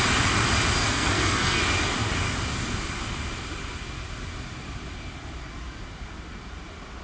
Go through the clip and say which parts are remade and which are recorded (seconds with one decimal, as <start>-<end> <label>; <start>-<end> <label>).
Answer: 0.0-0.8 recorded; 0.8-1.6 remade; 1.6-7.0 recorded